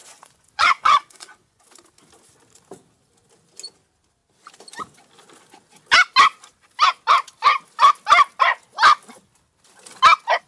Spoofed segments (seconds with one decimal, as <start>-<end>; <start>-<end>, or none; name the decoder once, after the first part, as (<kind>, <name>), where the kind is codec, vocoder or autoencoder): 0.0-1.6 (vocoder, Vocos)

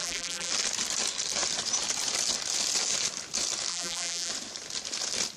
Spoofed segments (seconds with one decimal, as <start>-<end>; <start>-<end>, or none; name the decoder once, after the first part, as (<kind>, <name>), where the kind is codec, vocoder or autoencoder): 0.0-0.5 (vocoder, BigVGAN v2); 3.7-4.3